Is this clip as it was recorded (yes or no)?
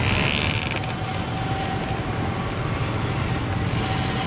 yes